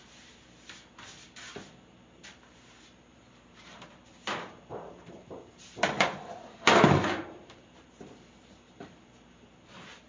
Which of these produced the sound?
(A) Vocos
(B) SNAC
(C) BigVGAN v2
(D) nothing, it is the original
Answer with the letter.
C